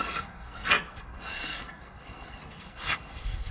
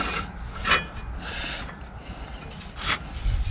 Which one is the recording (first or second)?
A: second